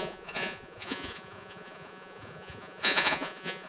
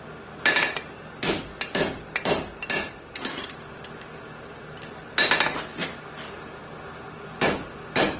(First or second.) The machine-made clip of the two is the first